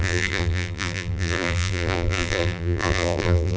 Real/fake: fake